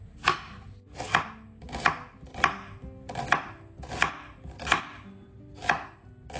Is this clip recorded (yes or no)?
yes